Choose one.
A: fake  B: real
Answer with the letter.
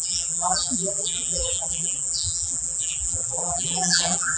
A